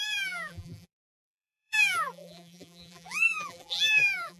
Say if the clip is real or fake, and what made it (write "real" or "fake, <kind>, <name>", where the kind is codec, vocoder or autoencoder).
fake, vocoder, BigVGAN v2